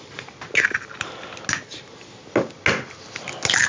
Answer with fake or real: real